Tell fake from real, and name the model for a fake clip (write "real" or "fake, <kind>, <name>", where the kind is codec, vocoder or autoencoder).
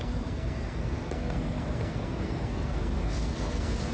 fake, codec, SNAC